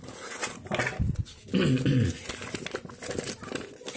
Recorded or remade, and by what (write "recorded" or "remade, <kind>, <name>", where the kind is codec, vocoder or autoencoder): recorded